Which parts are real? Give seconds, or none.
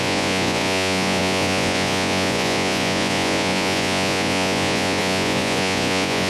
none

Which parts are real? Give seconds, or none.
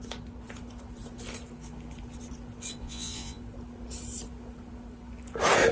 0.0-2.8; 3.4-5.7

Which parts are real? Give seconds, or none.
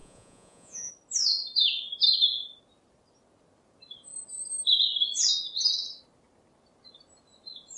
0.9-7.8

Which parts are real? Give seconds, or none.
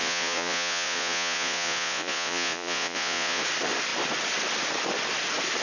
3.4-5.6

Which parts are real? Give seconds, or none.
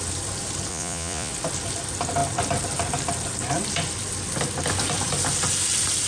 0.0-0.7; 1.3-6.1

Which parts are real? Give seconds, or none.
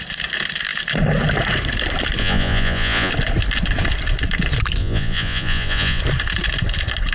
0.0-2.2; 3.1-4.8; 6.0-7.1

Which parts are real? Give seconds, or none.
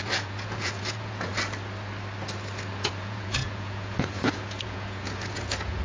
1.3-2.7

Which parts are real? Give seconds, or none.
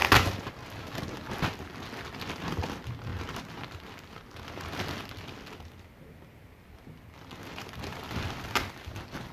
0.0-9.3